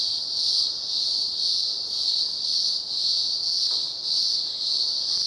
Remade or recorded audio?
recorded